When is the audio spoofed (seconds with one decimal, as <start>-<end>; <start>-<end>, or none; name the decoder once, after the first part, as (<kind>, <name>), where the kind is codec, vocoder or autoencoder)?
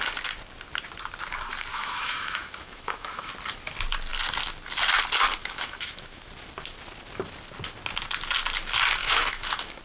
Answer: 1.7-3.3 (autoencoder, DAC-VAE); 5.4-6.3; 9.0-9.8